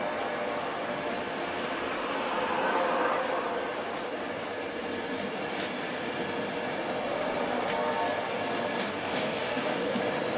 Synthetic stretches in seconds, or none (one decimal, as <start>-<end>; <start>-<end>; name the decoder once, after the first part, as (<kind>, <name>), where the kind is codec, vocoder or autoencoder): 8.8-9.9 (codec, DAC)